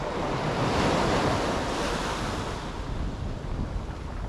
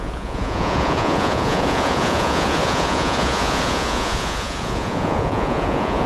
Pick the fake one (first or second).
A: second